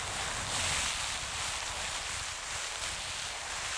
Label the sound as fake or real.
real